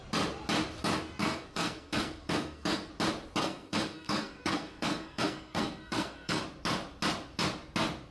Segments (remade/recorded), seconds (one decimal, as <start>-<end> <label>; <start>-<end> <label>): 0.0-1.2 recorded; 1.2-2.9 remade; 2.9-3.4 recorded; 3.4-6.4 remade; 6.4-8.1 recorded